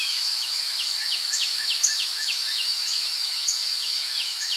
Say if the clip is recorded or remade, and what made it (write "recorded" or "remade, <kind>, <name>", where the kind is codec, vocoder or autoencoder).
remade, autoencoder, DAC-VAE